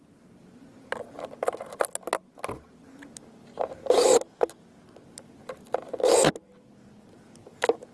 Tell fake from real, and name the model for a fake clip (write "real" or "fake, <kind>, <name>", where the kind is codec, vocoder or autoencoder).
real